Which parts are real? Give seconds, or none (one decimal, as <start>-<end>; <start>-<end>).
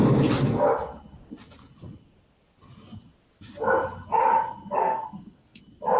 0.0-4.8; 5.6-6.0